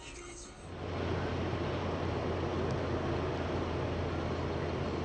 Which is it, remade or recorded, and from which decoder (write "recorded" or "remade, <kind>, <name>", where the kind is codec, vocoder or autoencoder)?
recorded